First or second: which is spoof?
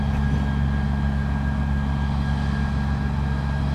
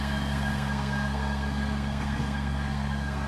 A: second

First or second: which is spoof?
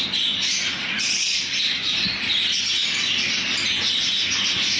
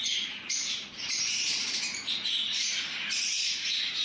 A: second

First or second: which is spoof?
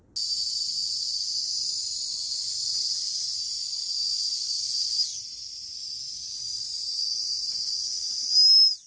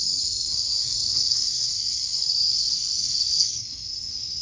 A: second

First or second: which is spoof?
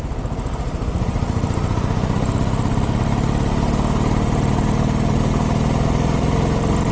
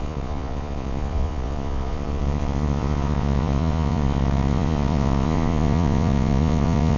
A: second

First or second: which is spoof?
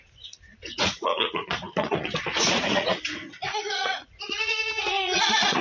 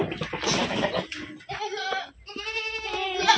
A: first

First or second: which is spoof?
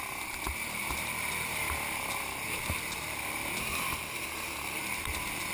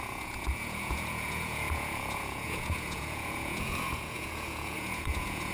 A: second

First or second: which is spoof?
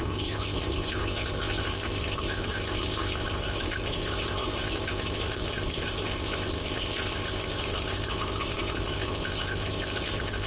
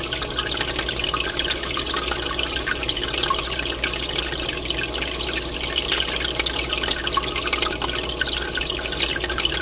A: first